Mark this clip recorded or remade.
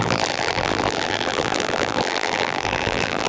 remade